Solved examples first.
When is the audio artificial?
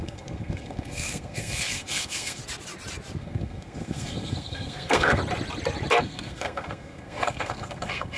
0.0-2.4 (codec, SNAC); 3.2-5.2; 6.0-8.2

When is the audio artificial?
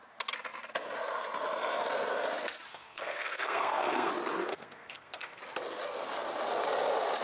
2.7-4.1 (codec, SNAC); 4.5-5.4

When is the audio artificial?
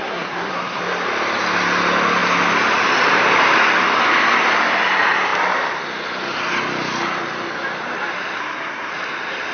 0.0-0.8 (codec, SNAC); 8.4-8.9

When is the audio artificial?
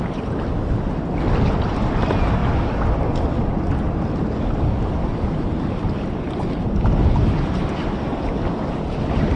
none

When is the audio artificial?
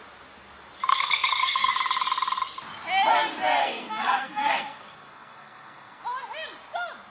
0.9-1.7 (codec, SNAC); 3.6-6.0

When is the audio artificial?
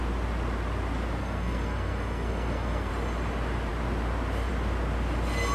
1.2-2.9 (codec, SNAC)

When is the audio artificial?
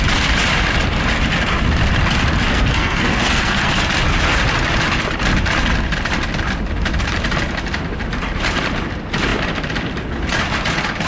2.5-3.7 (codec, SNAC)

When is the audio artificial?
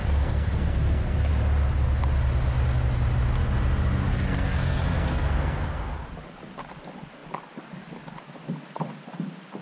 0.0-1.3 (codec, SNAC); 4.1-5.8